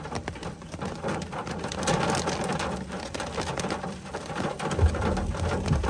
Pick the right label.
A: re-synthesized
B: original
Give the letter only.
B